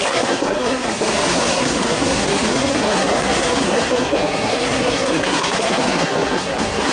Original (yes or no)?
no